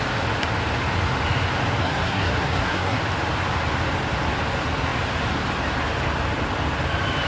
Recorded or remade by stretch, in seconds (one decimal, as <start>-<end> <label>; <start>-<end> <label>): 0.0-1.8 recorded; 1.8-3.0 remade; 3.0-7.3 recorded